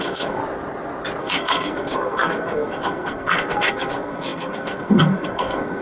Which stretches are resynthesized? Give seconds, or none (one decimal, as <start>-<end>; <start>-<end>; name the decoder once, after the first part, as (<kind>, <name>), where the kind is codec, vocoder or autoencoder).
0.0-0.4 (codec, SNAC); 1.2-5.8